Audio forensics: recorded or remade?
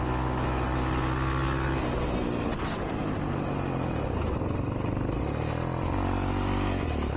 recorded